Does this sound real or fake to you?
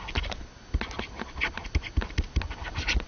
real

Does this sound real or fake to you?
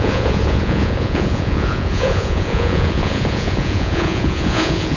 fake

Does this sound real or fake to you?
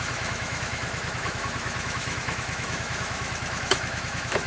fake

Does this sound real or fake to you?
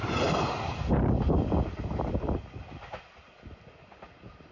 real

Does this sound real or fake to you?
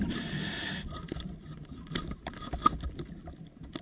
real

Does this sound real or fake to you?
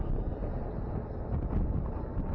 real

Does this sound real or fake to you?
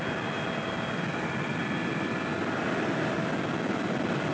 real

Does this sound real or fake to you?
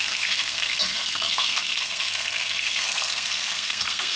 fake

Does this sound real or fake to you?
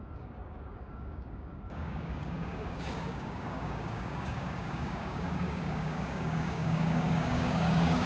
fake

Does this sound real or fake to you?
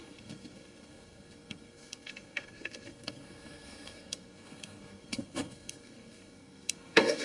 fake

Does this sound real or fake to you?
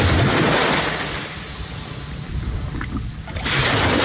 real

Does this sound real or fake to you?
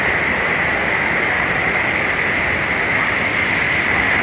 real